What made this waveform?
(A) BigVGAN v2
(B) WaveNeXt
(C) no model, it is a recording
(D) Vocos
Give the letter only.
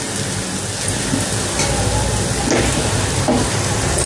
C